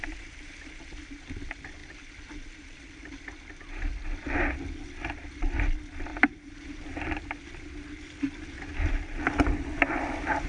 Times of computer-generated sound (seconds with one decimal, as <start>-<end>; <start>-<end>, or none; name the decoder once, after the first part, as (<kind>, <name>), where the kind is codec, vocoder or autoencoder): 6.1-6.9 (vocoder, BigVGAN v2)